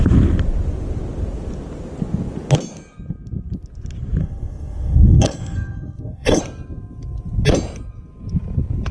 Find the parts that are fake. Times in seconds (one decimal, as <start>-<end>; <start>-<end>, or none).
4.2-6.4